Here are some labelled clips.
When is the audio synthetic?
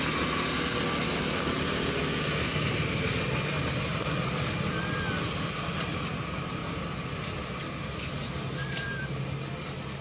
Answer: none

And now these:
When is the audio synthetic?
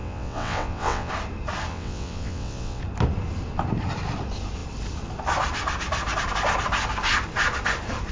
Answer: 0.0-1.1 (vocoder, WaveNeXt); 1.7-2.8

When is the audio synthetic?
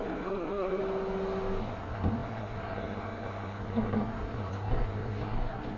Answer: 0.0-0.8 (codec, SNAC); 1.6-5.8